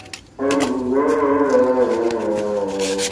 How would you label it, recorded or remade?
recorded